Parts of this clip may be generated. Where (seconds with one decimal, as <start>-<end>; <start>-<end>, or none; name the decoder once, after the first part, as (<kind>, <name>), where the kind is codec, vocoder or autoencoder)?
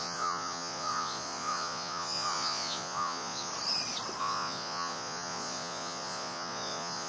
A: 0.0-3.5 (vocoder, Vocos); 4.2-7.1